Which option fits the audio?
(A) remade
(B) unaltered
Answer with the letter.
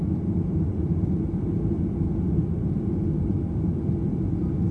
B